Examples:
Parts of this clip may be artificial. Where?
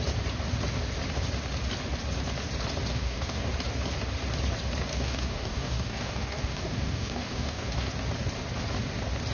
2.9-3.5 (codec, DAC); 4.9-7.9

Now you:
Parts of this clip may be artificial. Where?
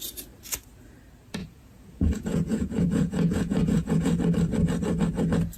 1.4-4.2 (vocoder, Vocos)